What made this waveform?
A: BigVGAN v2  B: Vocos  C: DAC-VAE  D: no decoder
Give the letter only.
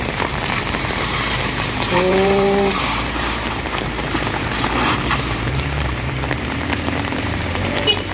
A